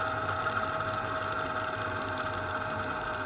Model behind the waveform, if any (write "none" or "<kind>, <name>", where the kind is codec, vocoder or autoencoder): none